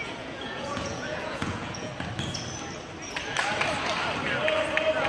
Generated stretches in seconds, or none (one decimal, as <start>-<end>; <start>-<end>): 0.0-1.9